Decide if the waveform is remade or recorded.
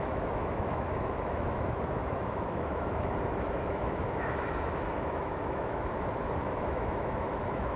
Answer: remade